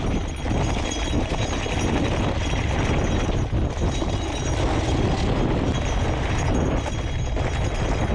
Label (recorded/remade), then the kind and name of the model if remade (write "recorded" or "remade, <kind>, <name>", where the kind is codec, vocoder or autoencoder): recorded